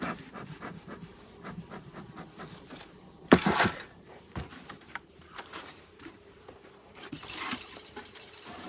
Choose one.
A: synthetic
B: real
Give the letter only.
A